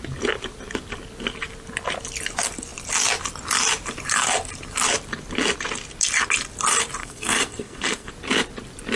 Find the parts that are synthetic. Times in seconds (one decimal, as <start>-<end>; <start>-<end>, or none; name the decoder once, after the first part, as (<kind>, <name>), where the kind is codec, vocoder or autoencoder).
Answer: 7.0-8.1 (codec, SNAC)